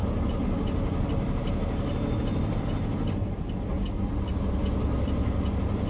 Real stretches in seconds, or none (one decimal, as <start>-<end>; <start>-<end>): 0.0-5.9